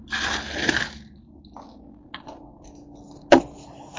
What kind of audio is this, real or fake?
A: real